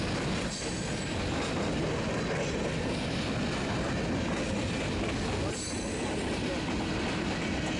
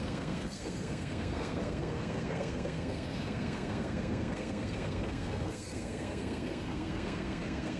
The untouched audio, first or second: first